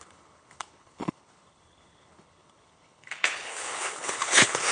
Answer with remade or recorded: remade